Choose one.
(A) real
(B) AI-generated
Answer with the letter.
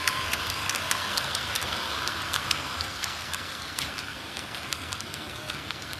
B